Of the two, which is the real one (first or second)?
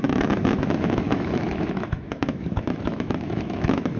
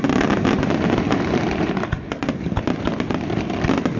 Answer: second